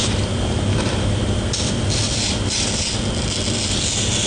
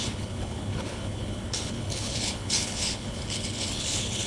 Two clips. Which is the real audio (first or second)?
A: first